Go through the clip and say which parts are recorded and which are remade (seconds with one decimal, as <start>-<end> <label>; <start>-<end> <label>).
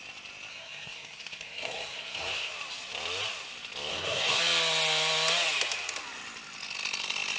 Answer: 0.0-0.5 recorded; 0.5-2.5 remade; 2.5-3.9 recorded; 3.9-4.4 remade; 4.4-7.4 recorded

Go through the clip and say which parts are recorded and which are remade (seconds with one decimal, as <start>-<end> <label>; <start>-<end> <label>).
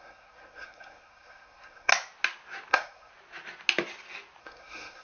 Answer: 0.0-1.9 remade; 1.9-2.7 recorded; 2.7-3.1 remade; 3.1-4.4 recorded; 4.4-5.0 remade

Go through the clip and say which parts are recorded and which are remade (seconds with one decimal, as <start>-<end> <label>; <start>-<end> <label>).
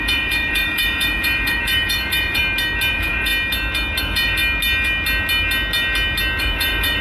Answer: 0.0-2.4 remade; 2.4-2.9 recorded; 2.9-3.3 remade; 3.3-4.0 recorded; 4.0-4.4 remade; 4.4-6.4 recorded; 6.4-7.0 remade